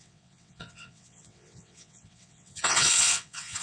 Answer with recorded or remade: remade